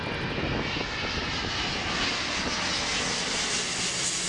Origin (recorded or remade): recorded